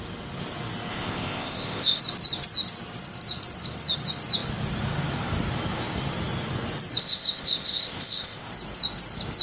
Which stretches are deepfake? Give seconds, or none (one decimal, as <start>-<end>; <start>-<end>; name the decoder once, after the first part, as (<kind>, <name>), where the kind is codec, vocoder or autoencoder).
0.9-2.0 (codec, ZipCodec); 7.0-8.5